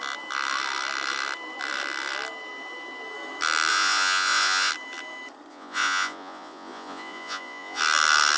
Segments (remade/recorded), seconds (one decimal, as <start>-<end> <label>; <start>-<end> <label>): 0.0-3.7 recorded; 3.7-4.7 remade; 4.7-5.5 recorded; 5.5-7.8 remade; 7.8-8.4 recorded